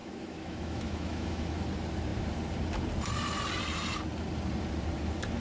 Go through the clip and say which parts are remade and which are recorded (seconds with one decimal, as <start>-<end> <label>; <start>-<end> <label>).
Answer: 0.0-1.6 remade; 1.6-5.4 recorded